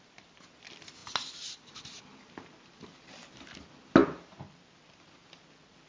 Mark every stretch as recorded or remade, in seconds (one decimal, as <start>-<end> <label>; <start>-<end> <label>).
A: 0.0-5.9 recorded